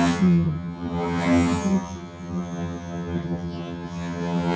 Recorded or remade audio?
remade